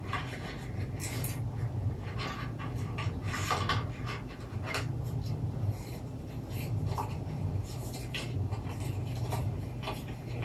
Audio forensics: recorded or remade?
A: remade